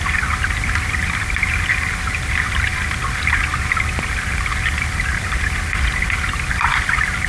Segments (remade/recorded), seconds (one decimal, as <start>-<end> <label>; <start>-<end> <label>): 0.0-7.3 recorded